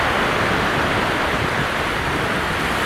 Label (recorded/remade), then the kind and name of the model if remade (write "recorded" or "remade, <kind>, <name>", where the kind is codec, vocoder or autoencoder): recorded